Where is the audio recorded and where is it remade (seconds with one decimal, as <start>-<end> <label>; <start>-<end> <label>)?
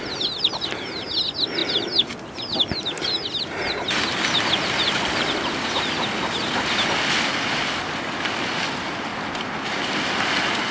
0.0-10.7 recorded